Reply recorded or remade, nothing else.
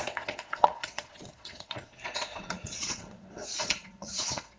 remade